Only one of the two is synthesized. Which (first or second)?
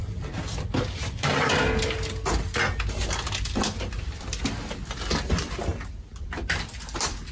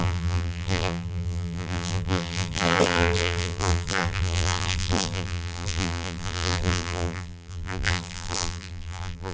second